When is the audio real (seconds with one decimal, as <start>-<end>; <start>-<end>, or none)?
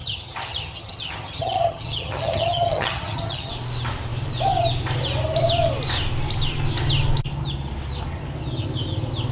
3.5-9.3